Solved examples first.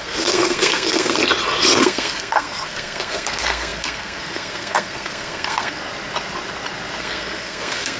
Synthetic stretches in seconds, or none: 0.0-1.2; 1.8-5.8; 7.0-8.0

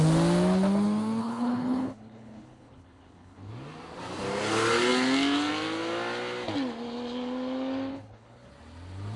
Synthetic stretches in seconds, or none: 1.2-3.5; 7.9-8.5

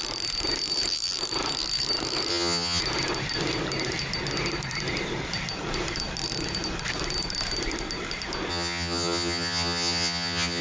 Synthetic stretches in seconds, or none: 2.3-2.8; 8.5-10.6

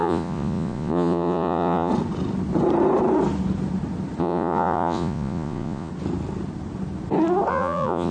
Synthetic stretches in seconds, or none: 0.0-1.9; 4.2-5.9; 7.5-8.1

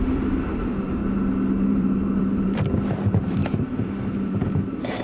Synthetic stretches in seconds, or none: 0.0-1.0; 1.7-3.4; 4.0-5.0

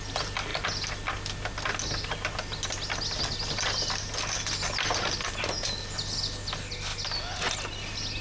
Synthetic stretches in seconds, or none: none

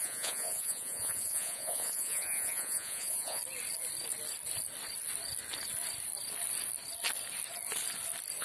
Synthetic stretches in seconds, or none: 0.0-3.4